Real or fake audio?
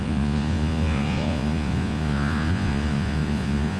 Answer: fake